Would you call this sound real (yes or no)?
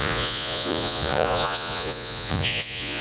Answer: no